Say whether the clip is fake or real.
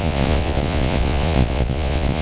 fake